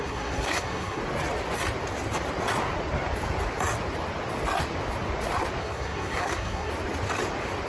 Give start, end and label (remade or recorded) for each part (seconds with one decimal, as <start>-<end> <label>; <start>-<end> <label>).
0.0-1.0 remade; 1.0-5.6 recorded; 5.6-6.7 remade; 6.7-7.7 recorded

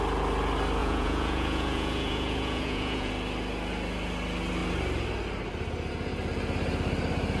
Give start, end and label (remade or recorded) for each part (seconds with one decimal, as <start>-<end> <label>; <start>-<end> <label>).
0.0-0.8 recorded; 0.8-3.1 remade; 3.1-7.4 recorded

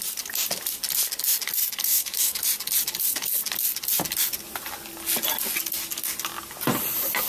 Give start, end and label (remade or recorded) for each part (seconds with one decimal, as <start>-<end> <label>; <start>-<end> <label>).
0.0-1.9 recorded; 1.9-2.4 remade; 2.4-7.3 recorded

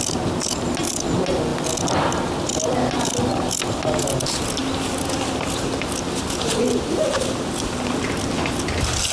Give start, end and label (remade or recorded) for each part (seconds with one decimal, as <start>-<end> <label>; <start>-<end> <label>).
0.0-9.1 recorded

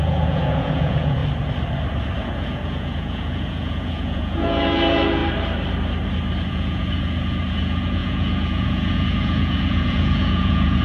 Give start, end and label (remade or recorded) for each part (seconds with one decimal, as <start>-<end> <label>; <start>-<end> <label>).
0.0-1.2 remade; 1.2-2.2 recorded; 2.2-5.2 remade; 5.2-6.5 recorded; 6.5-10.8 remade

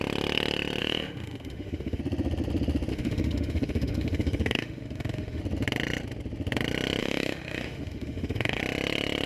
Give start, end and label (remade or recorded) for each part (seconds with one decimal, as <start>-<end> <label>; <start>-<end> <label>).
0.0-0.8 recorded; 0.8-2.0 remade; 2.0-2.9 recorded; 2.9-5.4 remade; 5.4-7.0 recorded; 7.0-8.6 remade; 8.6-9.3 recorded